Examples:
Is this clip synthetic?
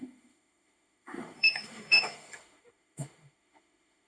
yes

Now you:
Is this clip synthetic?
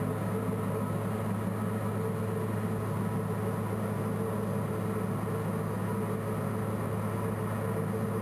no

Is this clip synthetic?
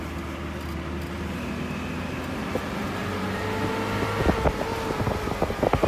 no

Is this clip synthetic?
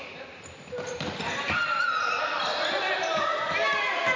no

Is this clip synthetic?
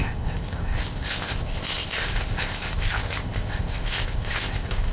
yes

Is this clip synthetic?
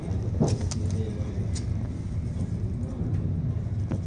no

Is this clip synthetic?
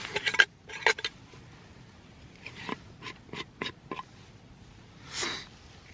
no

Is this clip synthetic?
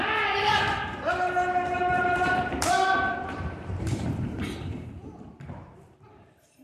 yes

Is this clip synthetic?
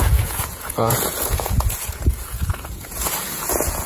yes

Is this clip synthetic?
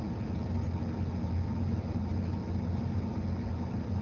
no